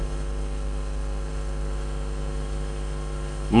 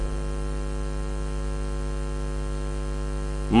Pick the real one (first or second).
second